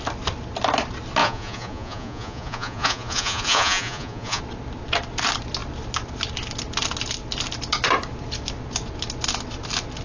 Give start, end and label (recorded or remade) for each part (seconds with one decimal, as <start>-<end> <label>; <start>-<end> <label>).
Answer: 0.0-1.2 recorded; 1.2-4.4 remade; 4.4-10.0 recorded

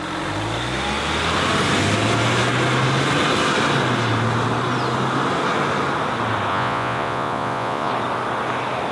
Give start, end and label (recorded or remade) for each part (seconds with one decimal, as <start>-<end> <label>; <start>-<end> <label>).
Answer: 0.0-6.5 recorded; 6.5-7.9 remade; 7.9-8.9 recorded